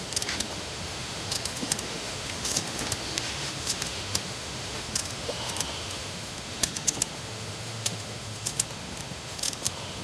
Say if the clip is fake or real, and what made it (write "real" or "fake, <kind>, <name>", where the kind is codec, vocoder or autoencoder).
fake, autoencoder, DAC-VAE